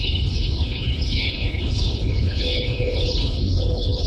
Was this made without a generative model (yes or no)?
no